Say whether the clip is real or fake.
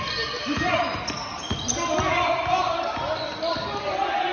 real